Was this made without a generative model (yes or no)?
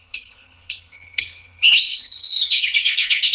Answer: no